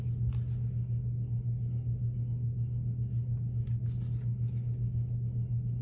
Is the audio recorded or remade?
recorded